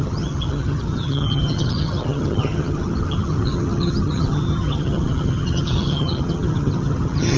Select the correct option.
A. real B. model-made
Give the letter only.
B